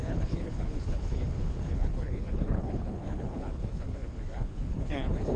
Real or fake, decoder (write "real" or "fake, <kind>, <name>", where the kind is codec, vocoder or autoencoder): fake, codec, HILCodec